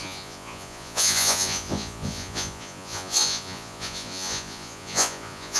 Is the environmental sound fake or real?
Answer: fake